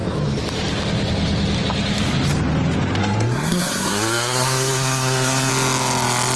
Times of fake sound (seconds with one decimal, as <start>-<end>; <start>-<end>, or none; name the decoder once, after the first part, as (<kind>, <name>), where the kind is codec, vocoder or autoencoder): 3.0-5.5 (codec, SNAC)